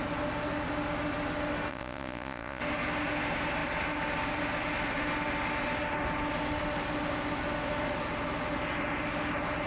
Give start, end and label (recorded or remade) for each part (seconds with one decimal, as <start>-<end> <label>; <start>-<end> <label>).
0.0-1.7 recorded; 1.7-2.6 remade; 2.6-9.7 recorded